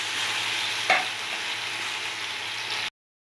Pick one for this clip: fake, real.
real